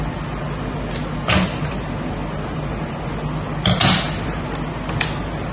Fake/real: real